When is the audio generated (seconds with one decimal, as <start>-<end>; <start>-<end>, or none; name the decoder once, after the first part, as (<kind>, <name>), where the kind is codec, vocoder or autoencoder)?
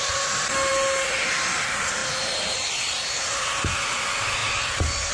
none